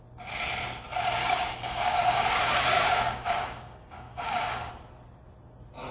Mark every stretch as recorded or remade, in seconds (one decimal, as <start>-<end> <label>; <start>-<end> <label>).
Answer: 0.0-1.2 recorded; 1.2-4.7 remade; 4.7-5.9 recorded